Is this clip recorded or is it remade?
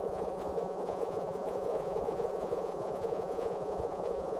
remade